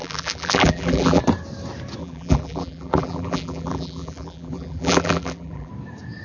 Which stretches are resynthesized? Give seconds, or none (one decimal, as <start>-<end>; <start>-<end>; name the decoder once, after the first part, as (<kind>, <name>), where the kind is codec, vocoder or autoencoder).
0.0-1.2 (vocoder, BigVGAN v2); 2.0-5.7